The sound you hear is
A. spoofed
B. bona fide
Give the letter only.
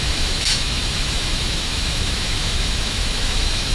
A